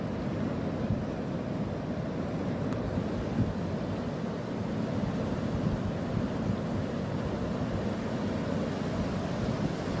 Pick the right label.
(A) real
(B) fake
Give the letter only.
A